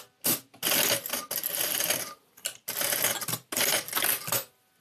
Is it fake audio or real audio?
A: real